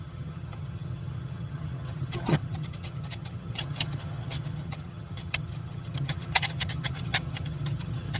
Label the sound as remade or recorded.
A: remade